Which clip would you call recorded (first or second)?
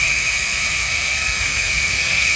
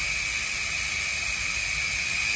second